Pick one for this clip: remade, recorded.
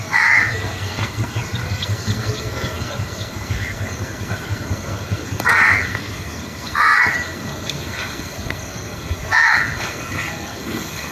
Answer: remade